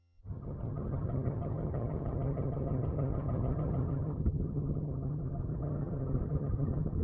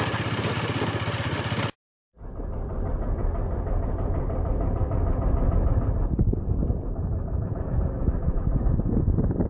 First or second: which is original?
second